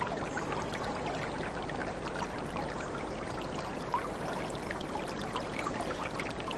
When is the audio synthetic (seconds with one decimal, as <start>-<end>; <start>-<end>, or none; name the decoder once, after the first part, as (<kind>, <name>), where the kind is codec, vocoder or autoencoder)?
0.0-1.8 (vocoder, BigVGAN v2); 4.4-6.6